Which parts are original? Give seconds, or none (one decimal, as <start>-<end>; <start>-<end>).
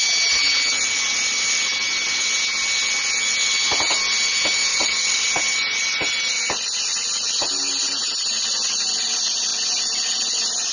0.0-4.7; 5.3-10.7